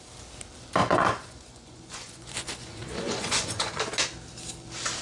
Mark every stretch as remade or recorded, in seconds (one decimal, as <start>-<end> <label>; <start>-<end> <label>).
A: 0.0-0.8 recorded; 0.8-3.8 remade; 3.8-5.0 recorded